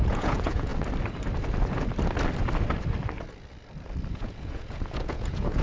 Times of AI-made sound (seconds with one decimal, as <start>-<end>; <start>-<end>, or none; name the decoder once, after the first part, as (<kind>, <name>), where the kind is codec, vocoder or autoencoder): 0.0-0.7 (vocoder, Vocos); 4.1-5.6